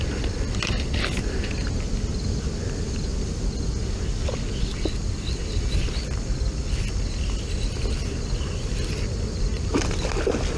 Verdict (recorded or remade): recorded